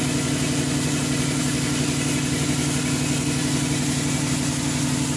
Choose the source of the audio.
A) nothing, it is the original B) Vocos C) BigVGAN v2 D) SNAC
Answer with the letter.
A